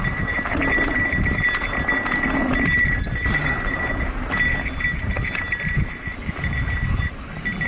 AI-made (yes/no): no